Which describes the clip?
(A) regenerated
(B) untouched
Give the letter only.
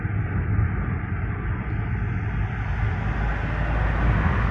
B